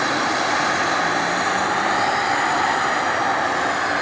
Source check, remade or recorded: recorded